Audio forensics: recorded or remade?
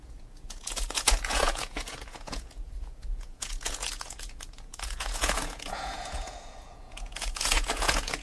remade